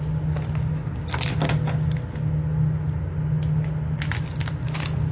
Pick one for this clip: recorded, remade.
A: recorded